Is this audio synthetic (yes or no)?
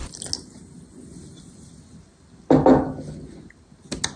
no